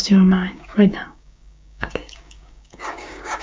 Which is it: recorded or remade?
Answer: remade